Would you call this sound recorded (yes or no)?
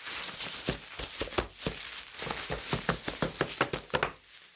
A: yes